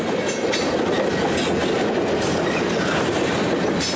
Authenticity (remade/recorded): recorded